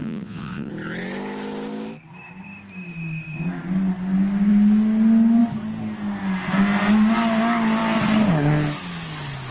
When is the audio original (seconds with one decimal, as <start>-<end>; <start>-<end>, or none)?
0.7-9.5